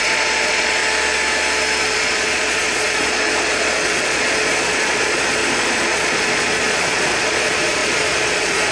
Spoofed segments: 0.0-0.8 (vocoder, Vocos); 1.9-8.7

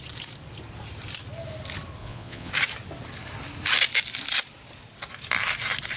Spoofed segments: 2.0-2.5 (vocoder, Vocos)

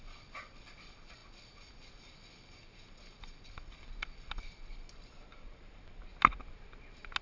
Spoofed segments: 5.3-5.8 (vocoder, BigVGAN v2)

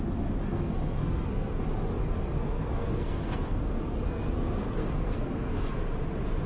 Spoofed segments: 0.5-1.6 (codec, SNAC); 2.0-5.9

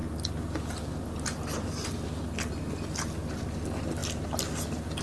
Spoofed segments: none

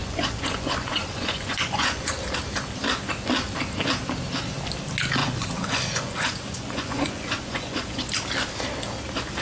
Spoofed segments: 0.0-2.1 (vocoder, Vocos); 5.2-8.1